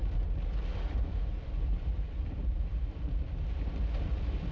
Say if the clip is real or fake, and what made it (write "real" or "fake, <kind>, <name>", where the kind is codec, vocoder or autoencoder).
fake, vocoder, BigVGAN v2